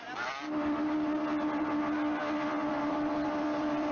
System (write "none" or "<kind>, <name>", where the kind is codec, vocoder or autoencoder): none